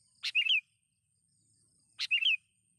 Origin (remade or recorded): recorded